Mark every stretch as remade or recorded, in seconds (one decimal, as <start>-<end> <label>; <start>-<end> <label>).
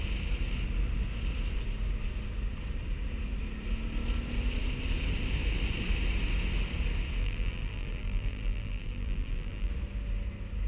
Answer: 0.0-7.2 recorded; 7.2-9.7 remade; 9.7-10.7 recorded